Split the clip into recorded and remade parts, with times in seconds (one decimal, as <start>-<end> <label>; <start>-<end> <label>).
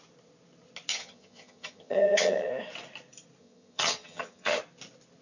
0.0-0.9 recorded; 0.9-2.5 remade; 2.5-3.4 recorded; 3.4-4.6 remade; 4.6-5.2 recorded